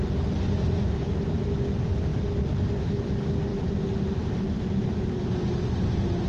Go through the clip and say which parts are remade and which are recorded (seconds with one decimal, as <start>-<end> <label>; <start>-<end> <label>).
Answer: 0.0-6.3 recorded